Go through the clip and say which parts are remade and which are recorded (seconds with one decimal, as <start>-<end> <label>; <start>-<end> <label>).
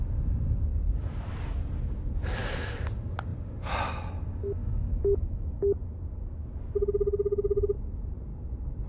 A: 0.0-4.6 recorded; 4.6-5.6 remade; 5.6-8.9 recorded